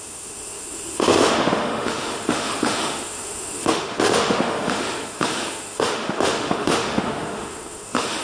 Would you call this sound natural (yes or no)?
no